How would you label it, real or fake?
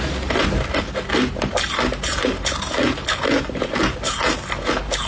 real